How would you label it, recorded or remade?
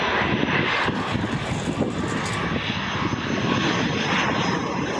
recorded